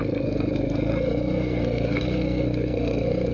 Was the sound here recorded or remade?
remade